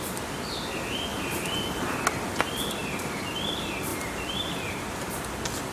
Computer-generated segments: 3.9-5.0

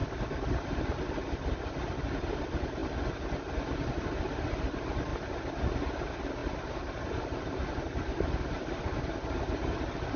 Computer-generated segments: 0.8-5.1; 5.8-10.2

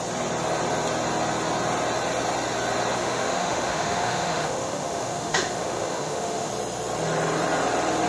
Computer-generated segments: 3.0-6.5

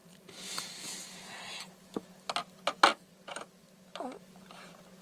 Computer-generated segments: none

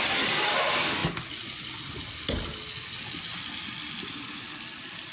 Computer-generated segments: none

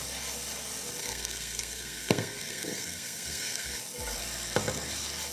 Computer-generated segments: 1.0-3.8